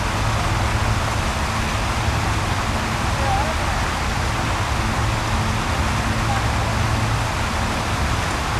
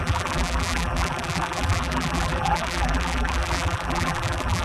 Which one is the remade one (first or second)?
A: second